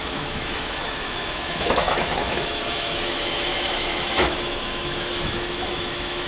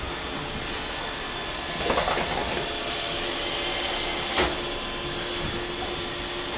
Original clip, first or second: second